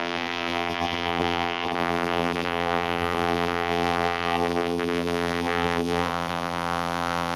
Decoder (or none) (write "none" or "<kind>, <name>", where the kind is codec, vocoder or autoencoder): vocoder, BigVGAN v2